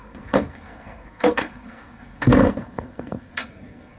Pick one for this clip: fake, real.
fake